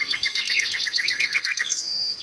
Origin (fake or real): fake